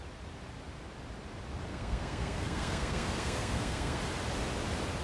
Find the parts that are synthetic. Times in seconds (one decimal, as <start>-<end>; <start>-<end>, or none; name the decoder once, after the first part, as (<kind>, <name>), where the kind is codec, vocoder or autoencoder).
1.7-4.0 (codec, SNAC)

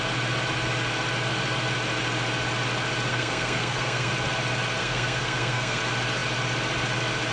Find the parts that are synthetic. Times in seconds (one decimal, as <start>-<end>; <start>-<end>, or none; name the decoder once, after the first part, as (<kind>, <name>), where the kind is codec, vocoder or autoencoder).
3.1-4.1 (codec, SNAC); 4.8-5.8

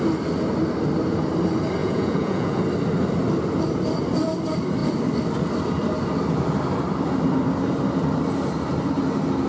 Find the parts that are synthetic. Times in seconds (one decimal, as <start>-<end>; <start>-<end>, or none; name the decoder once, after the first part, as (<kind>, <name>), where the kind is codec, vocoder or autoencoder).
1.8-2.6 (vocoder, Vocos)

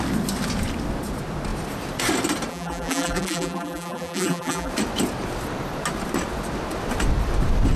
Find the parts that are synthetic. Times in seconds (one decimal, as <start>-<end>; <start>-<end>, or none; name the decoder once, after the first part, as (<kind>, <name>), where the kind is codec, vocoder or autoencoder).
2.5-4.7 (vocoder, BigVGAN v2)

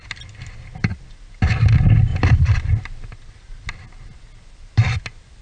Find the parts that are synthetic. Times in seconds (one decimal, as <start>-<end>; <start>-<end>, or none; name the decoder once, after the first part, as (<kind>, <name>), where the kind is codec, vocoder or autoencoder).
2.1-3.1 (vocoder, BigVGAN v2)

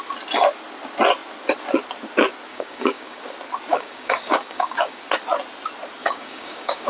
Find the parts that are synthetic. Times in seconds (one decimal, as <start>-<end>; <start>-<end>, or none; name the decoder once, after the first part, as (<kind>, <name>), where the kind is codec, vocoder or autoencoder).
2.5-3.2 (codec, DAC); 3.7-5.0; 6.0-6.9